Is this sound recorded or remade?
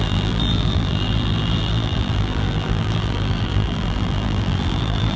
remade